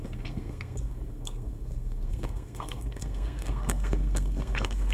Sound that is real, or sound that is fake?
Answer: fake